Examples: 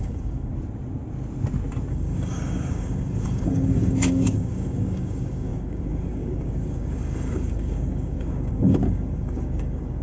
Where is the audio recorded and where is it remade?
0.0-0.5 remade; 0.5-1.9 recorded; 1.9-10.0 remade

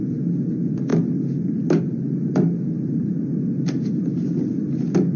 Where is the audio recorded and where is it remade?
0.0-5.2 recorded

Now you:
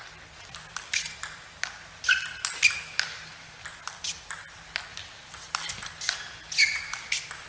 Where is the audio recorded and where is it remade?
0.0-7.5 recorded

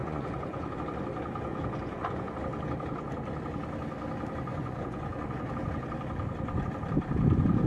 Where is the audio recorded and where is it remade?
0.0-0.8 remade; 0.8-1.5 recorded; 1.5-2.4 remade; 2.4-4.5 recorded; 4.5-5.5 remade; 5.5-7.7 recorded